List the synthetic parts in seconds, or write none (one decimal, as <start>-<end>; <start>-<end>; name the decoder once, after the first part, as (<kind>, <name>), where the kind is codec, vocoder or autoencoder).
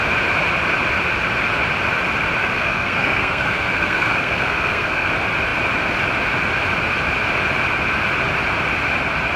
2.4-5.1 (codec, SNAC)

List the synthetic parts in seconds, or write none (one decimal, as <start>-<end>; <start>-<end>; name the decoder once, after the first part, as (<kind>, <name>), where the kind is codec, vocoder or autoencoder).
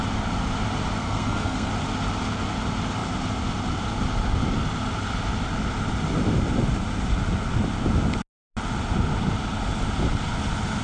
1.0-1.7 (codec, SNAC)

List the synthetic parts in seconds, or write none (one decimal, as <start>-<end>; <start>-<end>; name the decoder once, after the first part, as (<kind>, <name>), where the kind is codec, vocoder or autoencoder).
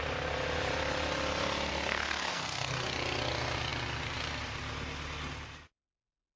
1.7-2.7 (codec, SNAC)